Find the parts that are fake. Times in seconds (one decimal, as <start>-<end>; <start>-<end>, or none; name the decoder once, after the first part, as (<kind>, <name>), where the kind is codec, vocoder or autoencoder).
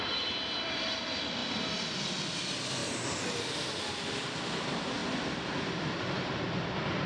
0.0-1.4 (vocoder, BigVGAN v2); 2.4-2.8; 3.9-7.1